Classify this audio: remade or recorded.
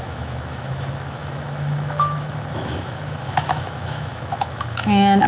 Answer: remade